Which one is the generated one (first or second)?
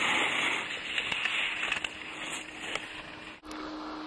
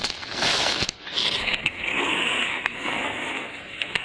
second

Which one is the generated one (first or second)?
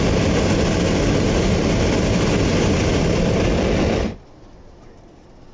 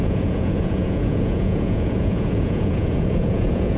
second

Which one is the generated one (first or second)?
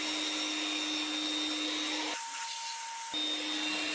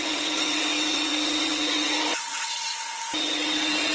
second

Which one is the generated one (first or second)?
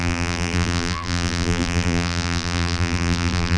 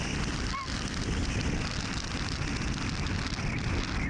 first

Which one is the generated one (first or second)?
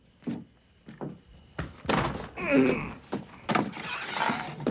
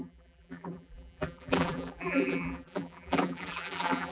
second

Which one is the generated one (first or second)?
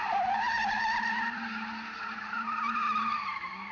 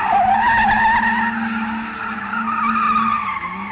first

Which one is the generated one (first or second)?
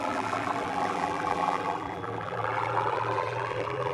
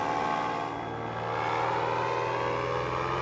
first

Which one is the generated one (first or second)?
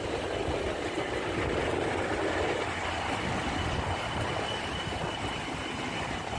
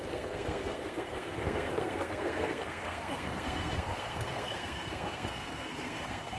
second